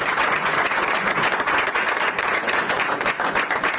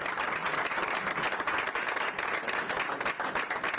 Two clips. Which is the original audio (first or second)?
second